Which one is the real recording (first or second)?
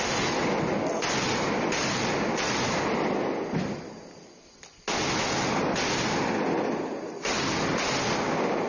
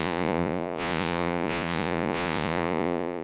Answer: first